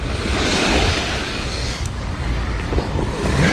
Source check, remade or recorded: remade